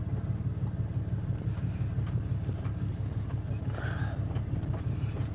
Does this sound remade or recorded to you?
recorded